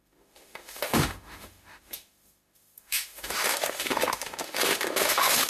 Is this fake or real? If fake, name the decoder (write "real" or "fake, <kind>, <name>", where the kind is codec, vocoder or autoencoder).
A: fake, autoencoder, DAC-VAE